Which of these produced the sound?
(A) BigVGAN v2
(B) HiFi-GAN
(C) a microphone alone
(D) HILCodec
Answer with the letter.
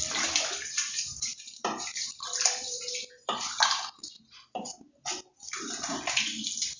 C